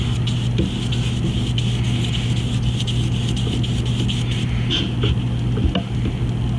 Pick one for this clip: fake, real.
real